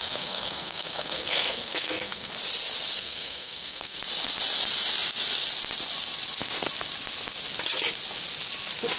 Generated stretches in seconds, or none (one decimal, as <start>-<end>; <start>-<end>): 0.0-2.3; 3.0-4.0